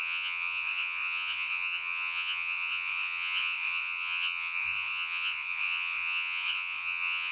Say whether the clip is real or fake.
fake